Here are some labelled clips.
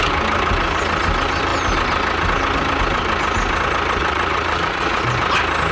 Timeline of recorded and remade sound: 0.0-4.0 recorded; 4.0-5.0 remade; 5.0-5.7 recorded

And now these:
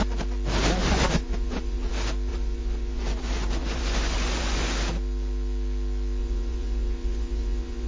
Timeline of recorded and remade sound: 0.0-0.8 recorded; 0.8-1.9 remade; 1.9-2.3 recorded; 2.3-4.7 remade; 4.7-6.2 recorded; 6.2-7.9 remade

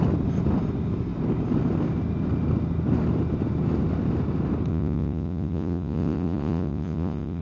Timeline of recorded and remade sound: 0.0-4.7 recorded; 4.7-7.4 remade

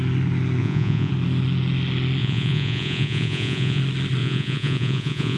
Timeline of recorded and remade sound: 0.0-0.6 recorded; 0.6-1.1 remade; 1.1-2.2 recorded; 2.2-3.8 remade; 3.8-4.2 recorded; 4.2-5.4 remade

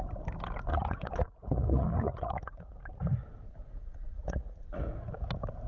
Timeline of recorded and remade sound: 0.0-0.7 recorded; 0.7-2.8 remade; 2.8-3.8 recorded; 3.8-4.9 remade; 4.9-5.7 recorded